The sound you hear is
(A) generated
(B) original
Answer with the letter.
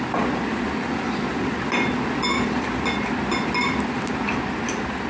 B